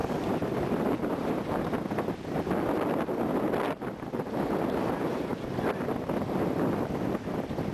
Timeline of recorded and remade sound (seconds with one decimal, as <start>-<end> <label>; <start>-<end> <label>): 0.0-1.6 remade; 1.6-7.7 recorded

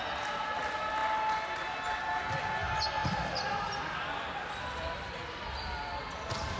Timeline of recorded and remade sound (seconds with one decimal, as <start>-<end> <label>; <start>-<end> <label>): 0.0-6.6 recorded

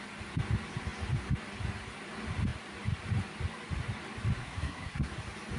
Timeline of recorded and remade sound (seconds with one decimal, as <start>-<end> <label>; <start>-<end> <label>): 0.0-4.4 recorded; 4.4-5.1 remade; 5.1-5.6 recorded